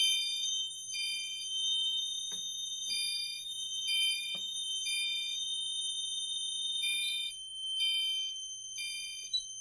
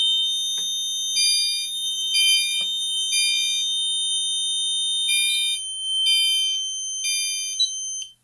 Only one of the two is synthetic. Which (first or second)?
first